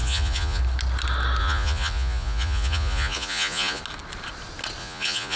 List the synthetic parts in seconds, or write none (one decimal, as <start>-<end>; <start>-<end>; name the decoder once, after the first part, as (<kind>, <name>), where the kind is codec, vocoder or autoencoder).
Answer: 0.0-0.6 (vocoder, Vocos); 1.4-3.8; 4.8-5.4